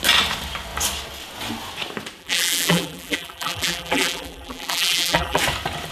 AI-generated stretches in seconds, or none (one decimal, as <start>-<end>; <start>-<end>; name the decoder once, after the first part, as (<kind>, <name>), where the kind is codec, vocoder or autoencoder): 2.2-5.4 (vocoder, BigVGAN v2)

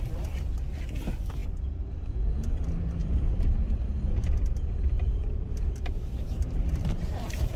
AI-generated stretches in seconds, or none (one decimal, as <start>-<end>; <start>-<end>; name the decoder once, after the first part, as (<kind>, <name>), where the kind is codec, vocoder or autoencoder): 3.0-7.6 (vocoder, BigVGAN v2)

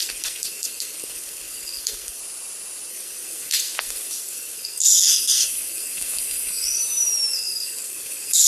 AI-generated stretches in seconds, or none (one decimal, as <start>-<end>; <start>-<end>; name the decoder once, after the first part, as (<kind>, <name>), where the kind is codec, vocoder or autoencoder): 0.0-2.2 (codec, SNAC); 2.9-6.8; 7.3-8.5

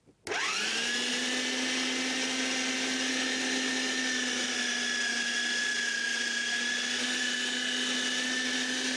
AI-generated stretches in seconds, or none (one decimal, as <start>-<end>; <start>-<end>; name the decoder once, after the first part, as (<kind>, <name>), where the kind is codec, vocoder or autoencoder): none